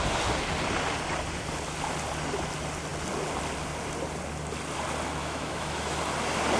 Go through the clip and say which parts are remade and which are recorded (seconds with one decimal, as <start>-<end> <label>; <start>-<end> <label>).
0.0-5.2 recorded; 5.2-6.0 remade; 6.0-6.6 recorded